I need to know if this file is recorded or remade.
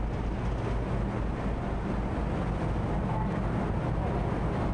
recorded